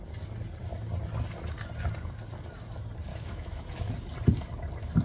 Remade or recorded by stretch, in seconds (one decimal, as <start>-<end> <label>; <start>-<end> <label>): 0.0-3.1 recorded; 3.1-3.9 remade; 3.9-5.0 recorded